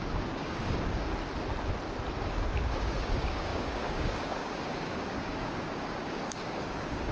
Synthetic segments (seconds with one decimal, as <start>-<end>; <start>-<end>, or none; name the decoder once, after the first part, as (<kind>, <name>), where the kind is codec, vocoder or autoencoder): 0.0-1.1 (codec, DAC); 2.1-7.1